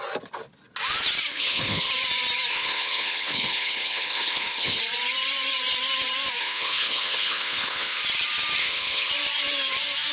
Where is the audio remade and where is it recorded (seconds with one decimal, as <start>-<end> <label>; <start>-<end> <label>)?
0.0-1.3 recorded; 1.3-1.9 remade; 1.9-2.5 recorded; 2.5-4.8 remade; 4.8-6.4 recorded; 6.4-8.0 remade; 8.0-8.6 recorded; 8.6-9.1 remade; 9.1-10.1 recorded